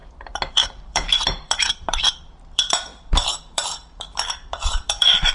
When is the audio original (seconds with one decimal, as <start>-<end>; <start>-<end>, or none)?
0.0-0.5